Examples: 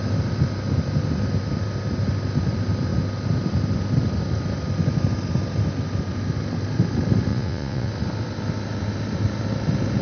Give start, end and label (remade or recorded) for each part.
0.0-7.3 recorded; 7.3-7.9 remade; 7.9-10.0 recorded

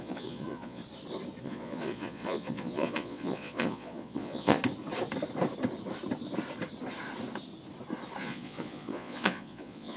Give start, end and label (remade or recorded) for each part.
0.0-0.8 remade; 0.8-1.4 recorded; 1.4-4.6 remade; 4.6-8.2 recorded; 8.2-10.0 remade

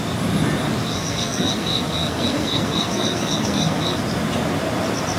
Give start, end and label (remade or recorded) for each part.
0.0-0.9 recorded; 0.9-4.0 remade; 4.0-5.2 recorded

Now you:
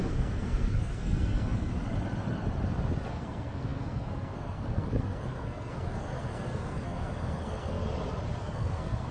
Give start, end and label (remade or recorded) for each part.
0.0-1.7 remade; 1.7-3.1 recorded; 3.1-7.8 remade; 7.8-8.3 recorded; 8.3-9.1 remade

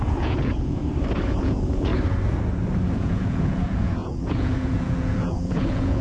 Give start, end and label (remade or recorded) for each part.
0.0-0.8 remade; 0.8-1.4 recorded; 1.4-1.9 remade; 1.9-2.9 recorded; 2.9-6.0 remade

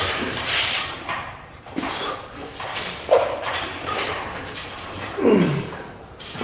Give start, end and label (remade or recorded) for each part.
0.0-2.7 remade; 2.7-3.6 recorded; 3.6-6.4 remade

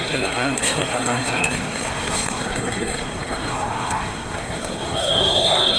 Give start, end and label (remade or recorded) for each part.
0.0-5.8 remade

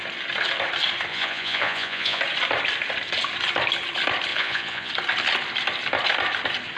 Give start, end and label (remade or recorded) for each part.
0.0-1.1 recorded; 1.1-2.2 remade; 2.2-4.3 recorded; 4.3-4.9 remade; 4.9-6.8 recorded